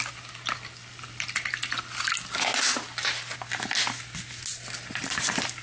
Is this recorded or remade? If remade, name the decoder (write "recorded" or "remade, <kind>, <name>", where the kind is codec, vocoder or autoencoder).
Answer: recorded